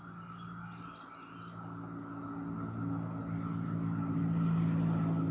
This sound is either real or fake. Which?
real